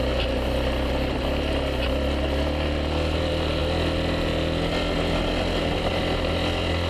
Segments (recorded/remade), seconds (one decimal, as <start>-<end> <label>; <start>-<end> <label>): 0.0-6.9 recorded